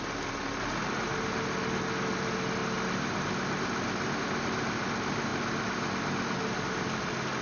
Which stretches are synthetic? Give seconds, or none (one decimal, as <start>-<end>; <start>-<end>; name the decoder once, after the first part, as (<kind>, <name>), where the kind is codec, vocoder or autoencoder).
none